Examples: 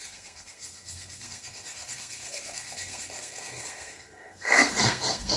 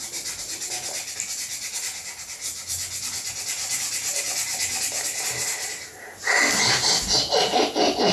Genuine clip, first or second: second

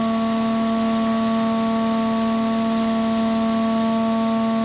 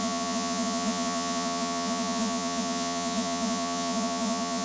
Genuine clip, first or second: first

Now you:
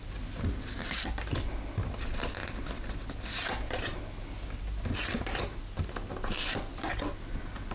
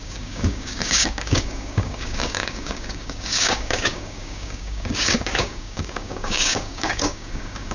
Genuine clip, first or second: first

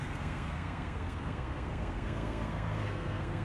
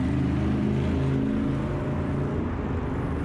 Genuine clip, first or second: second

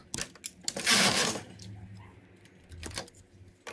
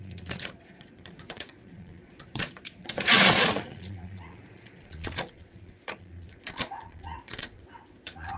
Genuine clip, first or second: first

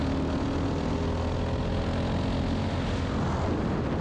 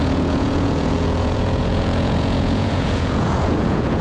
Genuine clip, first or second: first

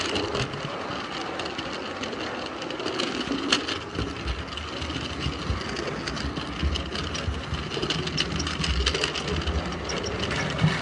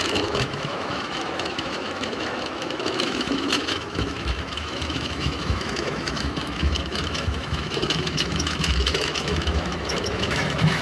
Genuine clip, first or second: first